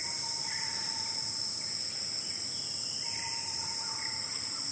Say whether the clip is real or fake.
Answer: real